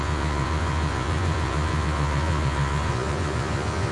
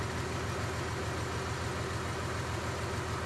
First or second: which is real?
second